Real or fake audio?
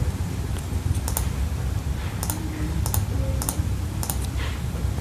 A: real